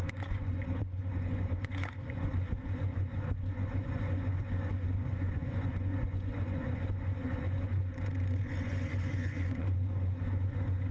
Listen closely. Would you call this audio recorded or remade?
remade